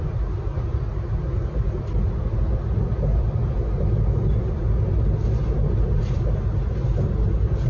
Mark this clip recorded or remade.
recorded